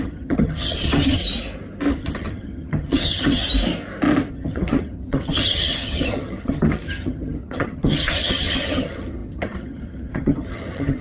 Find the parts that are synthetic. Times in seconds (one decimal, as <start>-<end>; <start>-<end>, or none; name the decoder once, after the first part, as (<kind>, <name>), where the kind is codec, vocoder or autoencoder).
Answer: 0.0-1.2 (vocoder, HiFi-GAN); 1.9-3.4; 4.3-11.0